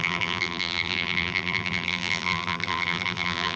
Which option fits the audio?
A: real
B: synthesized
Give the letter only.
B